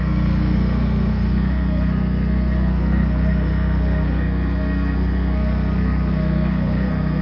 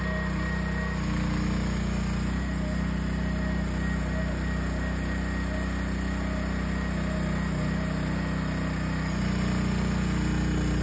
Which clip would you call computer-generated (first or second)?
first